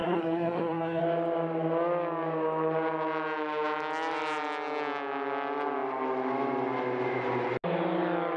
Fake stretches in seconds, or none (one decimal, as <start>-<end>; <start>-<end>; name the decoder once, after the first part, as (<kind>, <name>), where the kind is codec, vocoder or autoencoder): 0.0-1.0 (codec, SNAC)